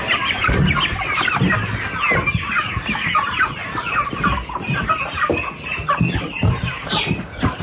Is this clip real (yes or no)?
yes